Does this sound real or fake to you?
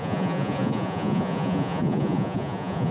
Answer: fake